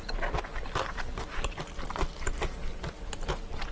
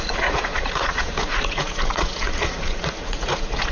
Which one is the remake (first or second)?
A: second